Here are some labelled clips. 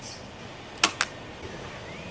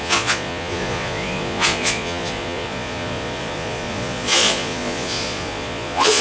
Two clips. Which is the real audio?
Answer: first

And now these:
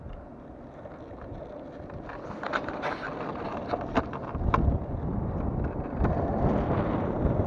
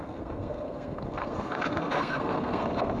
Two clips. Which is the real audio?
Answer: first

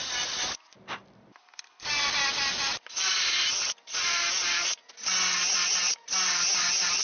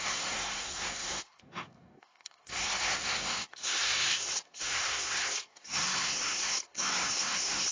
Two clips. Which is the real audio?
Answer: first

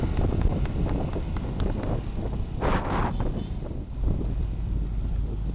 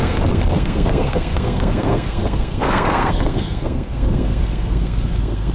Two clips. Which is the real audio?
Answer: first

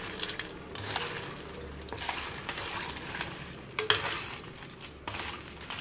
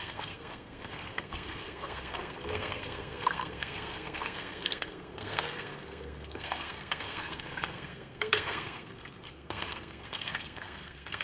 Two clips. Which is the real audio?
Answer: first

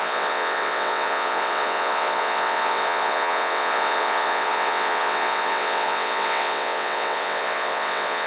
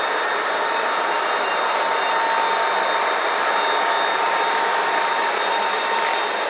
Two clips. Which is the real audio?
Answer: second